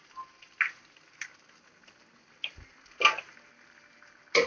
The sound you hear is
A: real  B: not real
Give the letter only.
A